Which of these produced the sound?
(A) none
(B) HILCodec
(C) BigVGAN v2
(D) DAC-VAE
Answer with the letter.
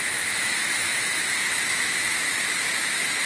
D